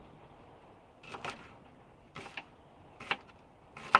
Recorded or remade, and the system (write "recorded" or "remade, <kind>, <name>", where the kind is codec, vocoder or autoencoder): recorded